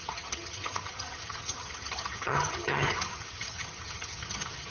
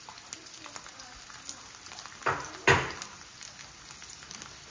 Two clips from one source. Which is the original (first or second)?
second